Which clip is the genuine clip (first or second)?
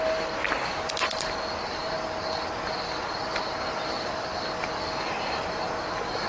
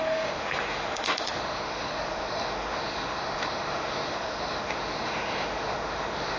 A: first